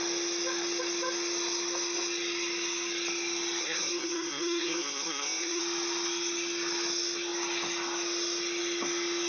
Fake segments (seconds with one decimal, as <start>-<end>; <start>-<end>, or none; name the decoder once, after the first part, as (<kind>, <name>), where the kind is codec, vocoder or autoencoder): 3.6-5.6 (codec, SNAC)